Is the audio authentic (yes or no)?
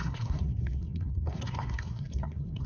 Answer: no